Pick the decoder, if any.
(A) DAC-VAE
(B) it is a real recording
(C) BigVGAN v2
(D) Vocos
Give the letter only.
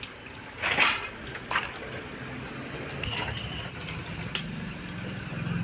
B